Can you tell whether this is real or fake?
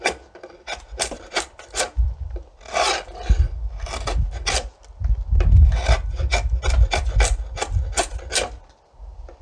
real